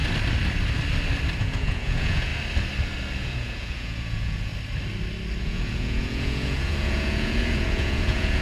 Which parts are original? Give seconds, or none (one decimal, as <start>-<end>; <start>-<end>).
0.0-1.4; 2.3-3.2; 4.5-5.4